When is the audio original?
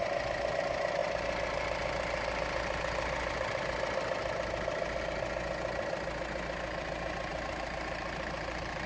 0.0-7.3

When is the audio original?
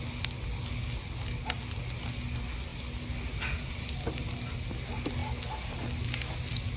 0.0-6.8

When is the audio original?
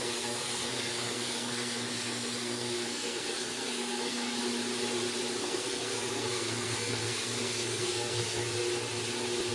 4.4-5.4; 8.5-9.5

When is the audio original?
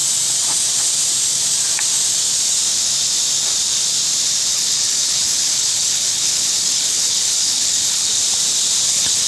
0.0-4.5; 8.1-8.9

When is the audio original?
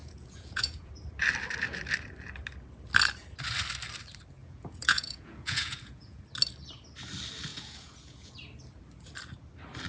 0.9-4.4; 6.2-7.5; 8.3-9.9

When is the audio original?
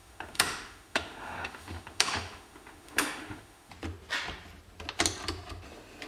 3.7-6.1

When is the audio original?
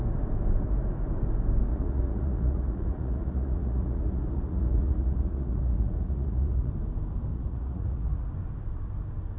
0.0-1.7; 6.7-7.3; 8.3-9.4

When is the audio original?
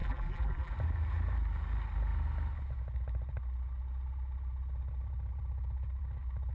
0.7-6.5